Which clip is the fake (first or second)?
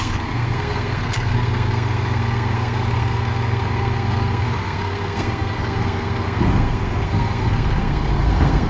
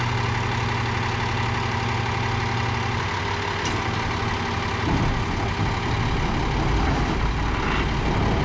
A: first